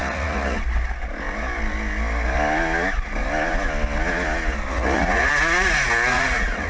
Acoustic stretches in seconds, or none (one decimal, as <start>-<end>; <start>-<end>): 0.6-4.7; 5.3-6.1